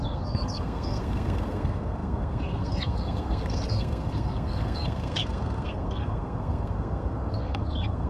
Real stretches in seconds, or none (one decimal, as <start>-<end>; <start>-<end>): none